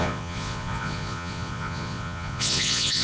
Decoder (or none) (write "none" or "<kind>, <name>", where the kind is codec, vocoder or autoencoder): vocoder, Vocos